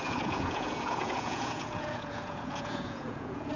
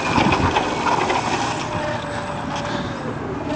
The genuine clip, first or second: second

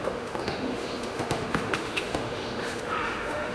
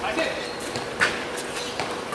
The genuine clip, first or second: second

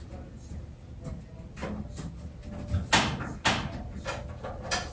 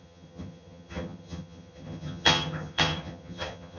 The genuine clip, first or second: first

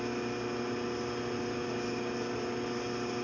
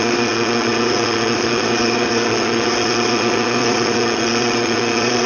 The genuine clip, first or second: first